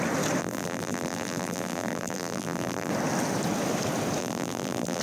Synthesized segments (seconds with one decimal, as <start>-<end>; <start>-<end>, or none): 0.4-2.9; 4.2-5.0